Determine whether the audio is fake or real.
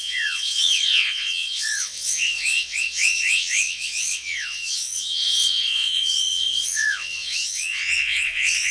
fake